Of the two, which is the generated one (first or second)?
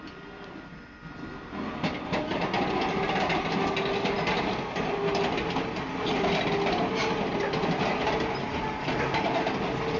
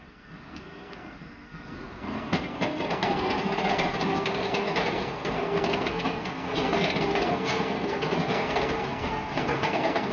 second